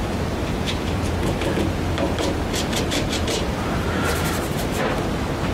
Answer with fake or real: fake